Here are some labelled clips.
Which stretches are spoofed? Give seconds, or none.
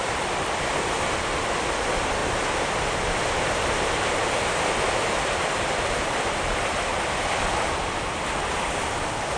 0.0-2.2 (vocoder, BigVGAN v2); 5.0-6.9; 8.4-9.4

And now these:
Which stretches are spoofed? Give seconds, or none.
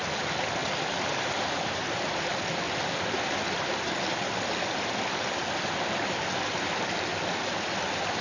none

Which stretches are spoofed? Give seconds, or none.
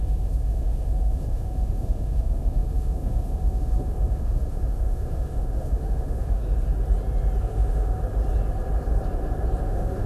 0.0-6.4 (autoencoder, DAC-VAE); 7.4-8.0; 9.6-10.1